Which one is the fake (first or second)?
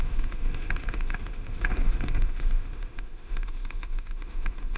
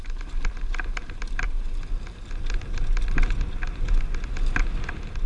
first